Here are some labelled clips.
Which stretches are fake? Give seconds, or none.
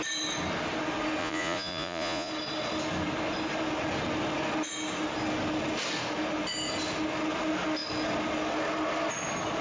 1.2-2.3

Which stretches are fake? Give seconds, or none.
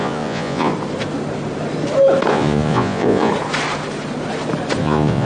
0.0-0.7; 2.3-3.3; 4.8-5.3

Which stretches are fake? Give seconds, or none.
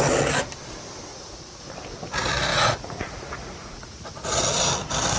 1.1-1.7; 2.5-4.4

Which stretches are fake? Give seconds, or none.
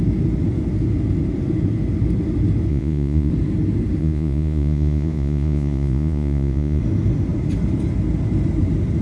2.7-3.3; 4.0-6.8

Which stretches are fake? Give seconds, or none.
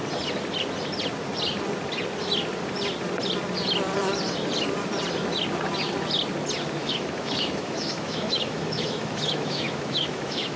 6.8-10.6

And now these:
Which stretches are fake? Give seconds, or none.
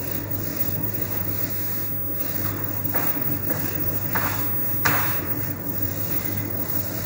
0.0-1.5; 2.2-4.4; 5.2-7.1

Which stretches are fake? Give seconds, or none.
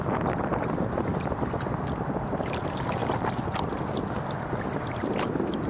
none